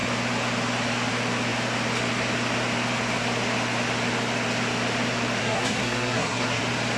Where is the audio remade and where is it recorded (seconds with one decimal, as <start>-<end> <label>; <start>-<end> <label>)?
0.0-5.4 recorded; 5.4-6.6 remade; 6.6-7.0 recorded